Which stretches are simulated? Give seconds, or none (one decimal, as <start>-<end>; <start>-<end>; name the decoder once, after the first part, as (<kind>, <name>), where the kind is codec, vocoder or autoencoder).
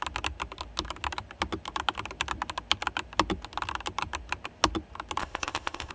5.2-5.9 (codec, ZipCodec)